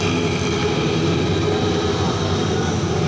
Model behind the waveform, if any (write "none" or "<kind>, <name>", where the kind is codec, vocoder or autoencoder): none